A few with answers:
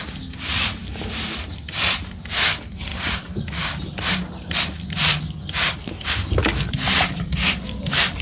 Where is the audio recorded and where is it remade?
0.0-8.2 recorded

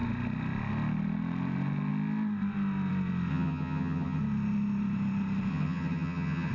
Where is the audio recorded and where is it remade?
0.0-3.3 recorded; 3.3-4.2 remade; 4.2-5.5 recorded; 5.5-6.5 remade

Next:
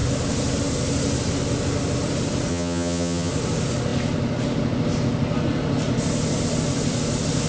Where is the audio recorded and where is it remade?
0.0-2.5 recorded; 2.5-3.3 remade; 3.3-7.5 recorded